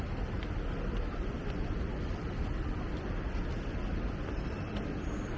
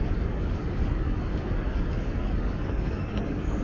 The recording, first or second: first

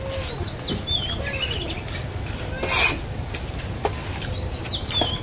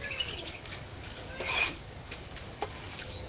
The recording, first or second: first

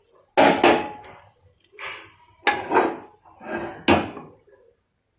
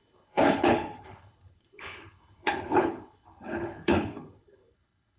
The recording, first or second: first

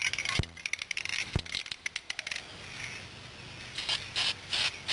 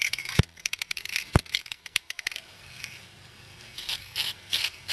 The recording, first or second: first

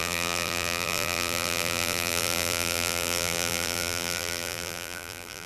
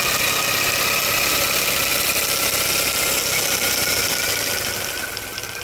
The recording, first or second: second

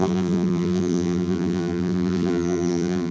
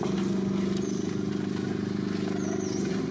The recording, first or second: second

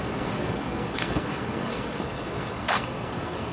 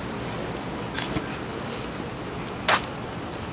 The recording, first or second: second